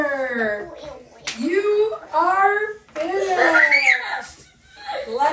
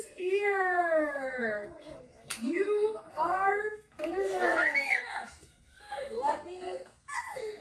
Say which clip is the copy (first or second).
second